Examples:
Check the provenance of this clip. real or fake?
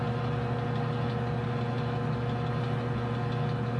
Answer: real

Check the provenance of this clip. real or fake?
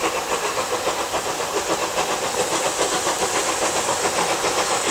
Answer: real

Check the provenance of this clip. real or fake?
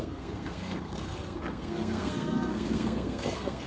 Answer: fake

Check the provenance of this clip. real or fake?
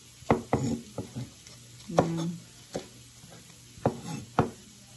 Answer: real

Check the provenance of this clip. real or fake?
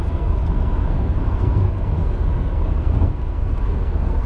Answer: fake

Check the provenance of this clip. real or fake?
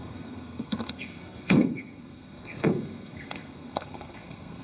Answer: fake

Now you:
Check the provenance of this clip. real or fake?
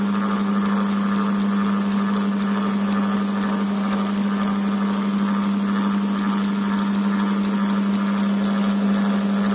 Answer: real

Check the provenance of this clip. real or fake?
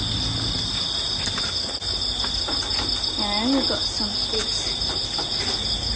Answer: real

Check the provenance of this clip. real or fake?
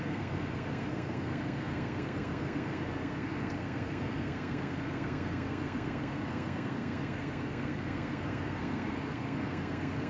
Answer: fake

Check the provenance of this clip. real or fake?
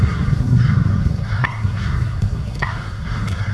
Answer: fake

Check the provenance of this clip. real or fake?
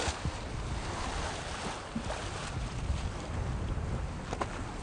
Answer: real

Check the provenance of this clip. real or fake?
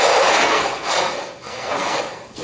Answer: fake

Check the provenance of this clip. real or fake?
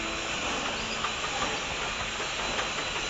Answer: real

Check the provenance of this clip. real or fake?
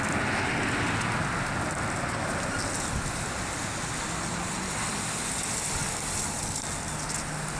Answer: real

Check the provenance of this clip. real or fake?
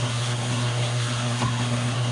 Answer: fake